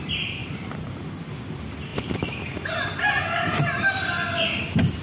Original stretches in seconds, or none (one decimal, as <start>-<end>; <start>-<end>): 0.0-0.4; 1.1-1.9; 3.1-5.0